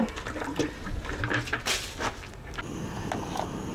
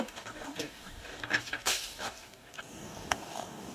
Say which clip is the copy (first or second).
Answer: second